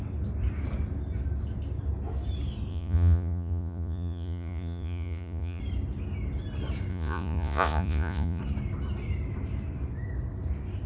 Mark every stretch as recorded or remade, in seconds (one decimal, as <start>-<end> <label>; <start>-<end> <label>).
0.0-2.7 recorded; 2.7-5.6 remade; 5.6-6.9 recorded; 6.9-8.4 remade; 8.4-10.9 recorded